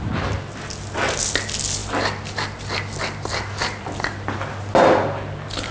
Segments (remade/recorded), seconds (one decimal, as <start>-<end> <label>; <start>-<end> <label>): 0.0-5.7 recorded